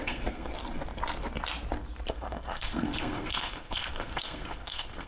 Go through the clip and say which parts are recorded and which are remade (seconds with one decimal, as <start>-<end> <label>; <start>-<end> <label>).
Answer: 0.0-0.5 remade; 0.5-2.1 recorded; 2.1-5.1 remade